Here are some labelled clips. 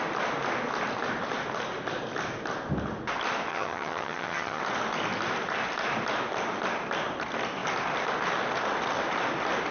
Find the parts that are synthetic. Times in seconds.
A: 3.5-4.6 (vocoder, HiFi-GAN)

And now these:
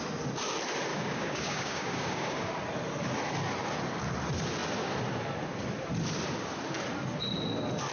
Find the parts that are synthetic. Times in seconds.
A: 0.9-2.5 (codec, DAC)

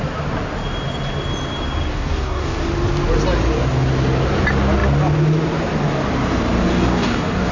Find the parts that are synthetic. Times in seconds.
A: 1.9-2.6 (codec, DAC); 6.7-7.5

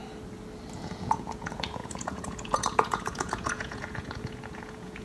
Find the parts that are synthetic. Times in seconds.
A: 0.8-5.0 (vocoder, Vocos)

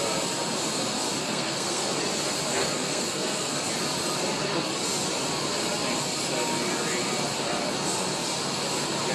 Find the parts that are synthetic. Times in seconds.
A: 1.2-2.0 (codec, SNAC); 2.6-3.7

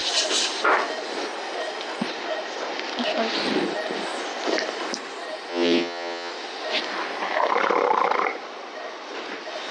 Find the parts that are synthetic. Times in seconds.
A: 5.5-6.3 (vocoder, WaveNeXt)

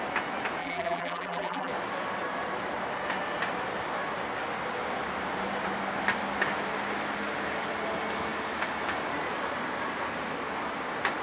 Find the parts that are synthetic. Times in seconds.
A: 0.6-1.7 (vocoder, BigVGAN v2)